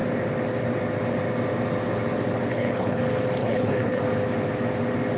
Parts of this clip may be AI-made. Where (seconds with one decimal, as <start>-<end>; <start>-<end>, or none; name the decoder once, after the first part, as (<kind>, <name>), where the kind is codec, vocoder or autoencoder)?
2.5-3.0 (codec, HILCodec); 3.4-4.0